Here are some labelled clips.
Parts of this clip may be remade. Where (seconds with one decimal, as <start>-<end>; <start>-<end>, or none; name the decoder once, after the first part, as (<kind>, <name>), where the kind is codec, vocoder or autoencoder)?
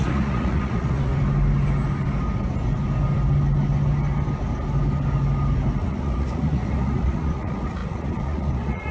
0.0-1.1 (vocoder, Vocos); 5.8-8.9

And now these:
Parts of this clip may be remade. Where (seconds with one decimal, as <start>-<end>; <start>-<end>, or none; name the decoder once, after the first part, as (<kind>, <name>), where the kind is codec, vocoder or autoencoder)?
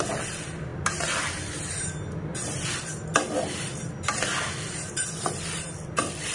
none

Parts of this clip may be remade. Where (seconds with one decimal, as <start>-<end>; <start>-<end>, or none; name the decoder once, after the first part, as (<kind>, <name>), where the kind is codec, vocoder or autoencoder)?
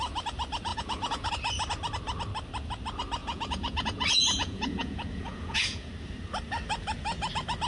0.7-1.3 (vocoder, Vocos); 3.2-5.9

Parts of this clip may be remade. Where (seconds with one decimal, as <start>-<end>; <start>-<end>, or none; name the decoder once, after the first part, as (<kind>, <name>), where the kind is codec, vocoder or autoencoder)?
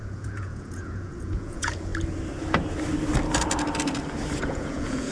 0.0-1.9 (vocoder, Vocos); 4.4-5.1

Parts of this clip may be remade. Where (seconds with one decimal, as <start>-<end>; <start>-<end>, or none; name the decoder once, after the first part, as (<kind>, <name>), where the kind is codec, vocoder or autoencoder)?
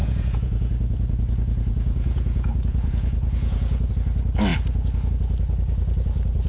0.0-3.9 (vocoder, Vocos)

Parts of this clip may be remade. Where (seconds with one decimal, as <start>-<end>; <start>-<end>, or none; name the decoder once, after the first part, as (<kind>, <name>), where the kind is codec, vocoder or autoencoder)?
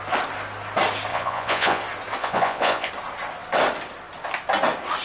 1.1-1.8 (vocoder, Vocos); 2.2-2.9